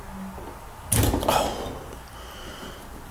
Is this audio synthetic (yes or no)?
no